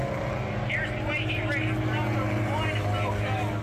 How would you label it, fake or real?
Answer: real